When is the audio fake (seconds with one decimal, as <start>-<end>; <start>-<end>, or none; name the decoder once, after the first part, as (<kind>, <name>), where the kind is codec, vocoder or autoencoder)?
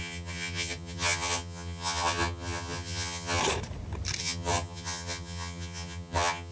0.0-3.4 (vocoder, HiFi-GAN); 4.2-6.5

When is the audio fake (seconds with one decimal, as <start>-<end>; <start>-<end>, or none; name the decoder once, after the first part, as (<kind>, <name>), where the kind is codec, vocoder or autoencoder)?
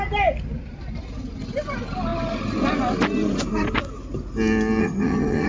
4.8-5.5 (vocoder, HiFi-GAN)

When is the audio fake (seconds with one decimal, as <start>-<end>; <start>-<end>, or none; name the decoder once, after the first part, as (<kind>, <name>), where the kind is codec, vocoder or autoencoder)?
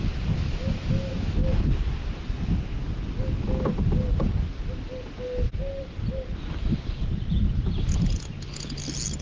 none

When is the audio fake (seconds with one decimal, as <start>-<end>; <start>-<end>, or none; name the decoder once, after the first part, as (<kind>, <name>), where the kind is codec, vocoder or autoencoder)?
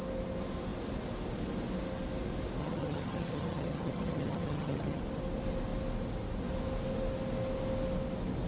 2.6-5.0 (vocoder, HiFi-GAN)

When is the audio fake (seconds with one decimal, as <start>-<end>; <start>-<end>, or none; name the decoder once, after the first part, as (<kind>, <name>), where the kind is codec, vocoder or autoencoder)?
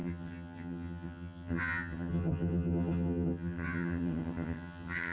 0.0-5.1 (vocoder, HiFi-GAN)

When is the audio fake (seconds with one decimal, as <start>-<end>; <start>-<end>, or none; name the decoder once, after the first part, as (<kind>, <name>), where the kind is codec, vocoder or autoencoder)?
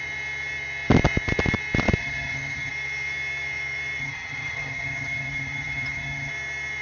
2.0-2.7 (vocoder, HiFi-GAN); 4.0-6.3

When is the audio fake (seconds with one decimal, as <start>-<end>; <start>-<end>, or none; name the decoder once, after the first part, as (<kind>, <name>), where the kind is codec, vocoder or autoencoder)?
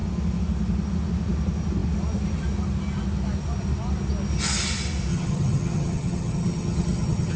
5.1-7.4 (vocoder, HiFi-GAN)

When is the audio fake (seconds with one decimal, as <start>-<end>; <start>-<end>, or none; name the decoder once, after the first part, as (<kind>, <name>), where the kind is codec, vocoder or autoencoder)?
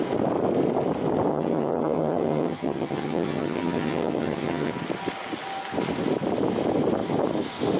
1.3-4.7 (vocoder, HiFi-GAN)